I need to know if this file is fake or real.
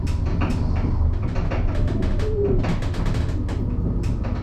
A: real